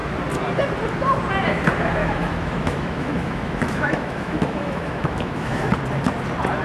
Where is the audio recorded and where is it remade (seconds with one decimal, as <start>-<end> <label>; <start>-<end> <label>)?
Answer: 0.0-2.0 recorded; 2.0-5.7 remade; 5.7-6.6 recorded